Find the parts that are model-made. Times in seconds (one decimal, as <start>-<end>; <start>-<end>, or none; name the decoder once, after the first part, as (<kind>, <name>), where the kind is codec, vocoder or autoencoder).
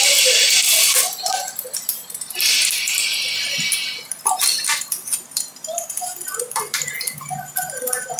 2.0-3.9 (vocoder, BigVGAN v2); 5.1-5.9